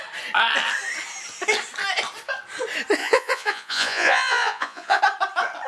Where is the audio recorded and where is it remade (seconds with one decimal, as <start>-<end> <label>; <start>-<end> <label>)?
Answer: 0.0-3.0 recorded; 3.0-5.0 remade; 5.0-5.7 recorded